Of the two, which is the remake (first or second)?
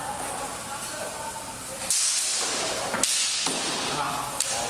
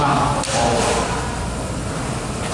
second